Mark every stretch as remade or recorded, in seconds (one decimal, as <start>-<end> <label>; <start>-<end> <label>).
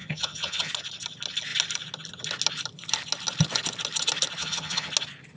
0.0-0.7 remade; 0.7-4.4 recorded; 4.4-4.9 remade; 4.9-5.4 recorded